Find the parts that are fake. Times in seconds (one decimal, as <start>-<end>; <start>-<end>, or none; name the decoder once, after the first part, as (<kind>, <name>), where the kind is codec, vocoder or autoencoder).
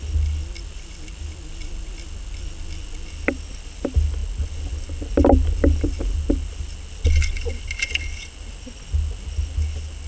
none